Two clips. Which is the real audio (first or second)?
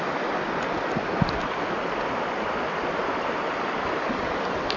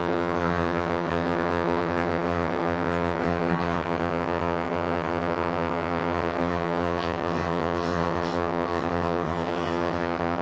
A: first